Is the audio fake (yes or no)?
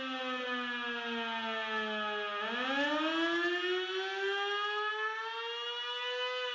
no